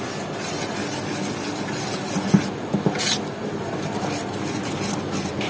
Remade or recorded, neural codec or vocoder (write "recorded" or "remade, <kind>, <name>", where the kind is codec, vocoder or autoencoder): recorded